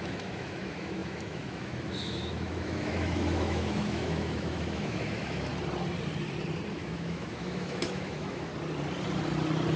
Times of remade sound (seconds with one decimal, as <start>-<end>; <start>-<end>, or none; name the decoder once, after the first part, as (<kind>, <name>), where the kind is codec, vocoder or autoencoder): 0.0-5.5 (autoencoder, DAC-VAE); 6.7-8.5